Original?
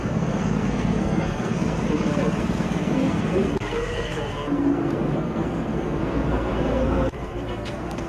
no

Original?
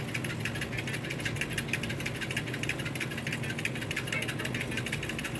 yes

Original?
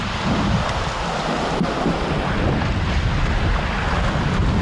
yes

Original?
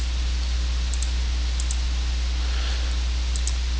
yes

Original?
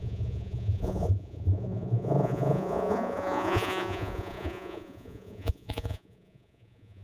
no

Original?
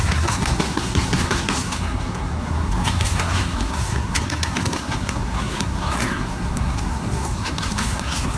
no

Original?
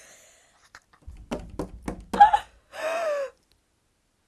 yes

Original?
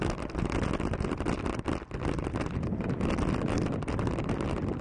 yes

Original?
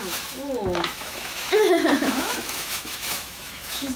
no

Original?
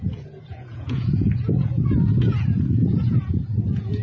no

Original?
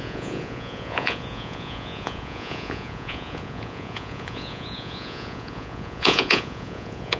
no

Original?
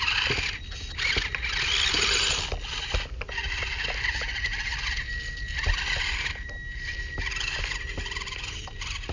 yes